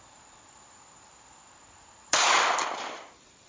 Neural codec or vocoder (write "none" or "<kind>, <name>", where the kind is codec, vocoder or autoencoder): vocoder, BigVGAN v2